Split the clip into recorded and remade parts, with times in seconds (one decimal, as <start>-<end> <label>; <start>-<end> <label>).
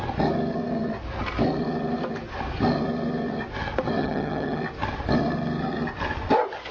0.0-4.0 recorded; 4.0-4.6 remade; 4.6-6.7 recorded